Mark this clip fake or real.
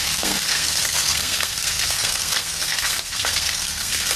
fake